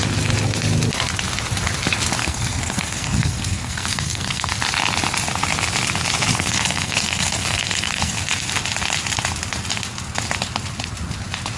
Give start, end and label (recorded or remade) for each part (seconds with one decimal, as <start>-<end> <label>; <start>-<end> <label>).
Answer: 0.0-2.2 recorded; 2.2-4.5 remade; 4.5-6.3 recorded; 6.3-8.5 remade; 8.5-11.6 recorded